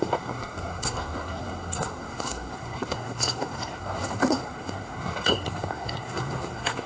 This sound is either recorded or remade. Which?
remade